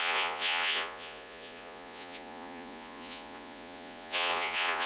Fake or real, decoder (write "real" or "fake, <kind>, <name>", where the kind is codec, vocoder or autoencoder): fake, vocoder, Vocos